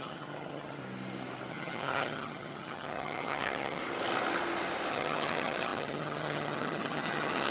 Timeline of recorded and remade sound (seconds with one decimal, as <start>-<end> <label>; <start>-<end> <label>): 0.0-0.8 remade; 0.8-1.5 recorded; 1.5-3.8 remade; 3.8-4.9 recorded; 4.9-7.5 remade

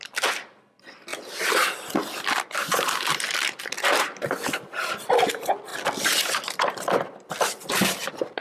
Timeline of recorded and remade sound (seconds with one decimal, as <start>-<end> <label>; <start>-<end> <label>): 0.0-8.4 recorded

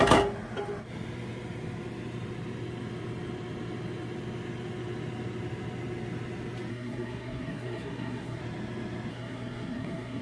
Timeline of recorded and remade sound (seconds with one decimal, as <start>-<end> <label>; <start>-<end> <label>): 0.0-6.7 recorded; 6.7-8.4 remade; 8.4-9.1 recorded; 9.1-10.2 remade